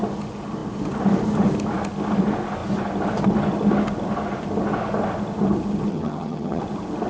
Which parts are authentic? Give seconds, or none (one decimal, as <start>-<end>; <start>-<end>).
0.0-5.9; 6.6-7.1